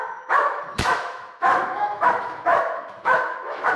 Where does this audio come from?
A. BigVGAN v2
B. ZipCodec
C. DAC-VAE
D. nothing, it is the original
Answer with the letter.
C